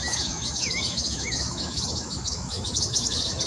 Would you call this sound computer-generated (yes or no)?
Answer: yes